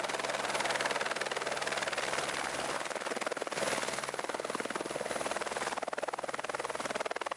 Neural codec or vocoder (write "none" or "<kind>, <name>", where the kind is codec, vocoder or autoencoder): none